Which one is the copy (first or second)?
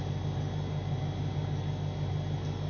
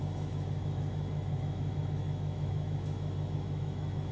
second